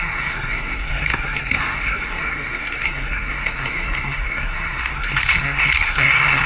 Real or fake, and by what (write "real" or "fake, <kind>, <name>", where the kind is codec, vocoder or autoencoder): fake, codec, SNAC